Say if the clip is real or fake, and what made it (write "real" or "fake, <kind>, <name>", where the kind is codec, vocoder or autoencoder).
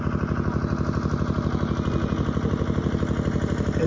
real